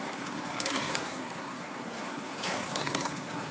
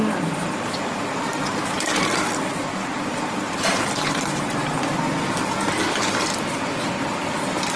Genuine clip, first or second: second